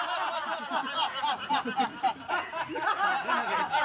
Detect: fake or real real